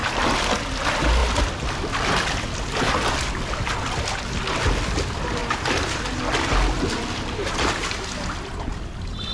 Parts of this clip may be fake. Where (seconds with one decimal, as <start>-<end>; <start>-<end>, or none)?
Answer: 5.4-6.0